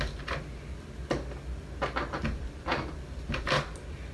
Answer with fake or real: real